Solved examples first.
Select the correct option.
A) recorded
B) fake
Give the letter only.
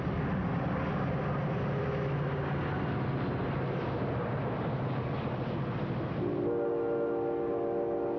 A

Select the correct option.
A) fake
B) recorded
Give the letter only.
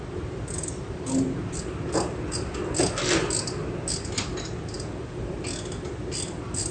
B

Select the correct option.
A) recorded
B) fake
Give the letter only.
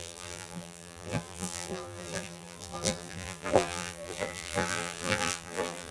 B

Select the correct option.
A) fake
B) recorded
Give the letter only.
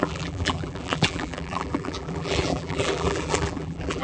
A